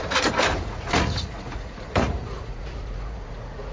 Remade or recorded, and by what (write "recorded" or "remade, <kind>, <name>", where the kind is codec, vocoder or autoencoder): remade, vocoder, Vocos